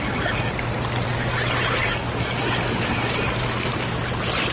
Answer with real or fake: real